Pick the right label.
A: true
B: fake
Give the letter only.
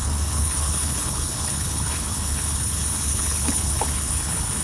B